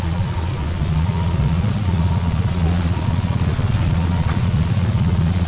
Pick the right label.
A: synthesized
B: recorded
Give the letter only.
A